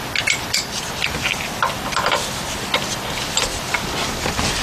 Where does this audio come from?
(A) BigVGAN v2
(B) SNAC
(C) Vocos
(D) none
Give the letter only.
D